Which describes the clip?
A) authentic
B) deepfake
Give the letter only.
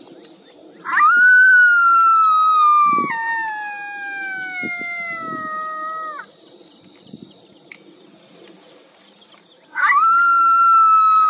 A